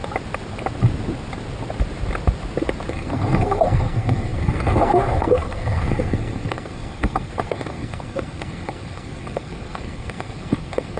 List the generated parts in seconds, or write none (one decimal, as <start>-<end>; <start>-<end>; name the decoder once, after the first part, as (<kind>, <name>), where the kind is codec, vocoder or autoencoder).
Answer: 2.9-11.0 (codec, SNAC)